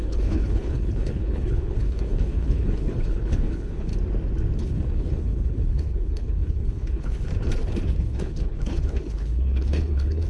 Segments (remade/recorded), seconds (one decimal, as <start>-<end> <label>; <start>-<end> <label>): 0.0-3.9 remade; 3.9-4.6 recorded; 4.6-7.3 remade; 7.3-7.9 recorded; 7.9-10.3 remade